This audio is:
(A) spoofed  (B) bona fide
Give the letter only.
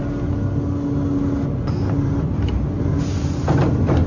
B